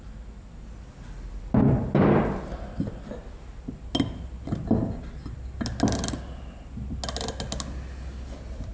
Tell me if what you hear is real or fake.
real